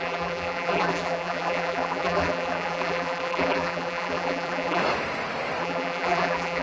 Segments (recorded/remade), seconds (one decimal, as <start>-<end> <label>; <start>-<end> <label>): 0.0-4.8 remade; 4.8-5.6 recorded; 5.6-6.6 remade